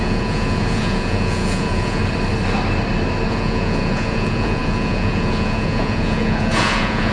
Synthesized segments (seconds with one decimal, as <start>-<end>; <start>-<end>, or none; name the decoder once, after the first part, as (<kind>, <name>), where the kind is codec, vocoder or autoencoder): 0.0-2.0 (vocoder, Vocos); 3.3-7.1